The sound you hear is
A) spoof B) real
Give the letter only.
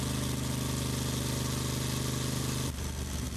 B